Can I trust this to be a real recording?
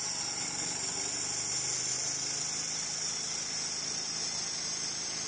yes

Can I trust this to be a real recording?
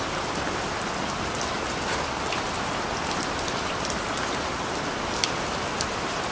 yes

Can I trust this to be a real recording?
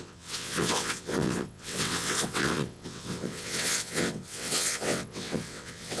no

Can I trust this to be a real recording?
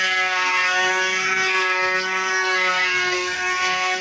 no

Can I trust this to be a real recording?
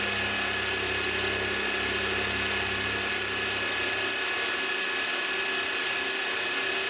yes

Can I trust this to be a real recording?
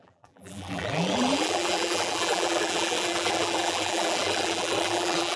no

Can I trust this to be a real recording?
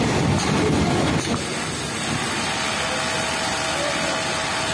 yes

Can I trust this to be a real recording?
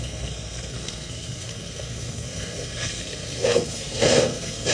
no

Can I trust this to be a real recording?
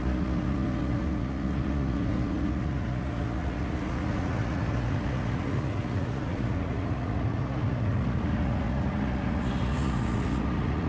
no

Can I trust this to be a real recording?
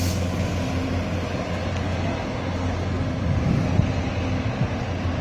yes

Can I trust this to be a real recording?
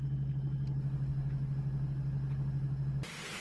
yes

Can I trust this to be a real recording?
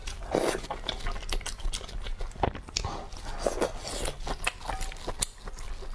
yes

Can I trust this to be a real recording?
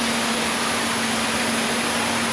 yes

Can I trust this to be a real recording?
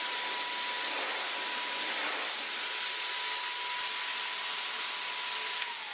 yes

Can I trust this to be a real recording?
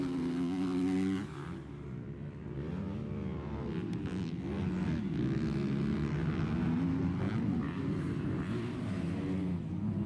yes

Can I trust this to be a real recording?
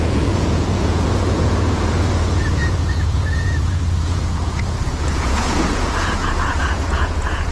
no